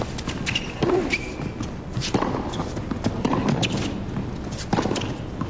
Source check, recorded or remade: recorded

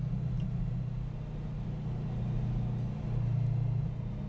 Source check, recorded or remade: recorded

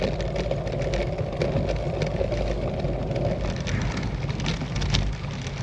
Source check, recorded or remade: recorded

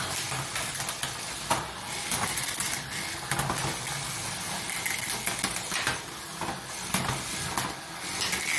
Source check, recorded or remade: recorded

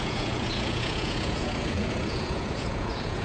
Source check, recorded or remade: remade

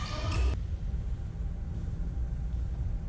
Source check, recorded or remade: recorded